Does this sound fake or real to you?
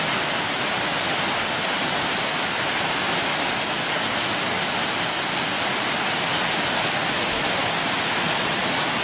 real